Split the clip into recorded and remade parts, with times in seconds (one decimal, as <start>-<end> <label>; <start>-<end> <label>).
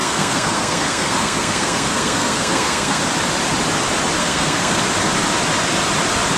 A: 0.0-3.0 remade; 3.0-4.2 recorded; 4.2-4.8 remade; 4.8-6.4 recorded